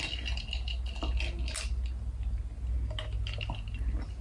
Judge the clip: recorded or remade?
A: recorded